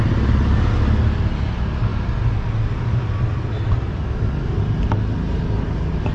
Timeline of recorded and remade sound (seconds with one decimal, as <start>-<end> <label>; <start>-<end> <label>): 0.0-6.1 recorded